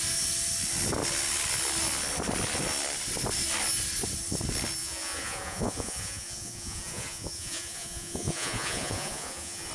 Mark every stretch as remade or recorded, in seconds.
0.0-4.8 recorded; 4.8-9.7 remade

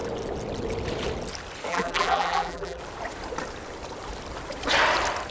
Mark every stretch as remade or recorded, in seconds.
0.0-1.7 recorded; 1.7-2.8 remade; 2.8-5.3 recorded

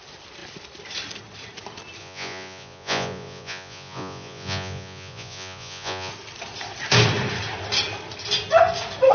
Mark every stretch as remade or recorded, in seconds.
0.0-2.0 recorded; 2.0-6.1 remade; 6.1-9.1 recorded

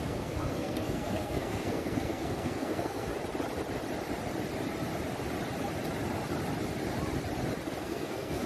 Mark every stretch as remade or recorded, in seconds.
0.0-3.1 remade; 3.1-7.8 recorded; 7.8-8.5 remade

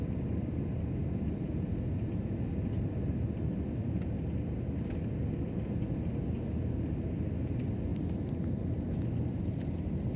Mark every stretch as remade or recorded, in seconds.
0.0-10.2 recorded